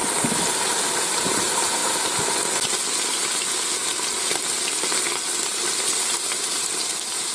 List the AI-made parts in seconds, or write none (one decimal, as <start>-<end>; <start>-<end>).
0.5-1.8; 5.3-7.3